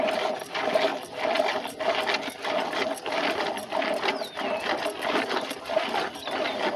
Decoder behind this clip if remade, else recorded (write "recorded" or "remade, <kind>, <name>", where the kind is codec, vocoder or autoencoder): recorded